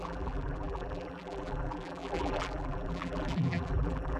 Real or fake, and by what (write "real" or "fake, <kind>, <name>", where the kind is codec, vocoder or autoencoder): fake, vocoder, BigVGAN v2